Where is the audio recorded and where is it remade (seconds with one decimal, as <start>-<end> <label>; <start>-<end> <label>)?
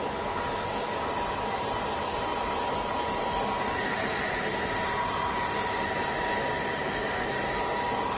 0.0-4.5 recorded; 4.5-6.2 remade; 6.2-8.2 recorded